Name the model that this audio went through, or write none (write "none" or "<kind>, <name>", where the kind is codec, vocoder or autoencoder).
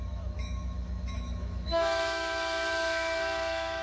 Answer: autoencoder, DAC-VAE